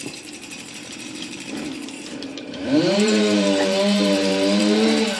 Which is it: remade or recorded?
remade